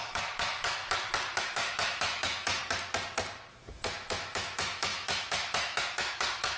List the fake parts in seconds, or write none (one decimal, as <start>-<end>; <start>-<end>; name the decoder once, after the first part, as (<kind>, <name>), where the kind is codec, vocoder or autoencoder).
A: 0.0-0.8 (autoencoder, DAC-VAE); 1.4-2.6; 3.5-6.6